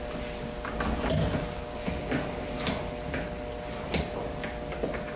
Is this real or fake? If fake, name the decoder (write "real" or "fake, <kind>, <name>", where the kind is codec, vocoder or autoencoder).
real